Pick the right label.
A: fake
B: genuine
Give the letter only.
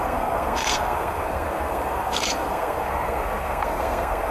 A